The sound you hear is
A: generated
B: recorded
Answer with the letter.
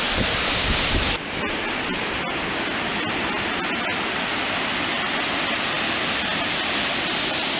B